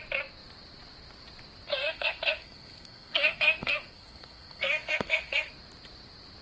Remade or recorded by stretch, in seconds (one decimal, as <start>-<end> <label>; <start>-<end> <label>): 0.0-1.7 recorded; 1.7-5.5 remade; 5.5-6.4 recorded